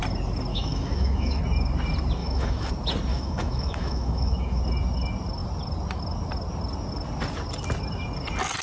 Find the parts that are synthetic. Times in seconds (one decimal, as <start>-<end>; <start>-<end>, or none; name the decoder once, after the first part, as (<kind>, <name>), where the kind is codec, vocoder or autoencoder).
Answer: 0.5-1.4 (autoencoder, DAC-VAE); 2.2-2.7; 3.1-4.6

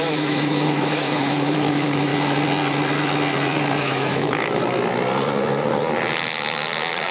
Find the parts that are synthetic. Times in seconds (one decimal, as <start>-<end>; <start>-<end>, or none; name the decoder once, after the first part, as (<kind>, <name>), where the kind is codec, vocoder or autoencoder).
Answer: 0.0-2.1 (autoencoder, DAC-VAE); 3.8-4.6

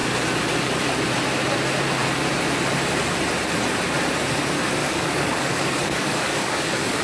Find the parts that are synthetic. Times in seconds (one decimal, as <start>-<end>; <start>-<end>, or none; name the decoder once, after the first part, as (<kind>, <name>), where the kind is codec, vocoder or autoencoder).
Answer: 4.8-7.0 (codec, DAC)